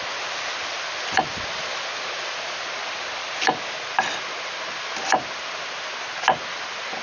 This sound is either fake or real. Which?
real